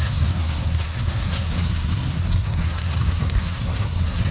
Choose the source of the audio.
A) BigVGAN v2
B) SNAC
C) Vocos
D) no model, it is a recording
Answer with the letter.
B